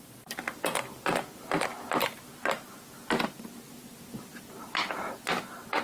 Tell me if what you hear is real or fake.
real